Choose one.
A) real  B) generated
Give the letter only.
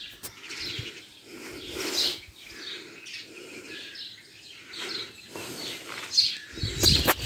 A